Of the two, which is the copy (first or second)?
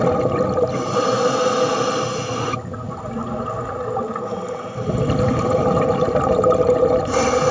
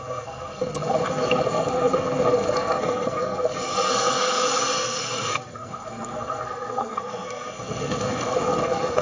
second